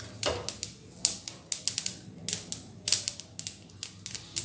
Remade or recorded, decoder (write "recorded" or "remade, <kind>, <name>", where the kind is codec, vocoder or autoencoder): recorded